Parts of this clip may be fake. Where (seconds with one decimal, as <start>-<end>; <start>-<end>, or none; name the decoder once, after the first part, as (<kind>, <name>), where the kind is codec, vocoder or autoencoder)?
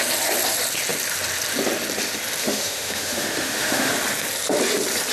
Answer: 2.4-3.9 (autoencoder, DAC-VAE)